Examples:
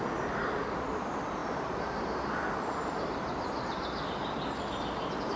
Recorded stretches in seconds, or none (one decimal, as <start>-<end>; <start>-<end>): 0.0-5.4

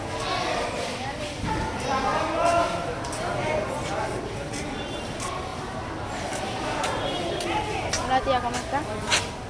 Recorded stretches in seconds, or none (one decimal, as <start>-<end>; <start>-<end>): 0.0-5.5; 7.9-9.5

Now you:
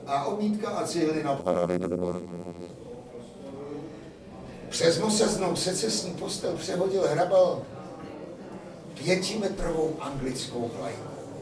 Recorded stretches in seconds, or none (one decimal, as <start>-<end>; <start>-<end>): 0.0-1.4; 2.7-11.4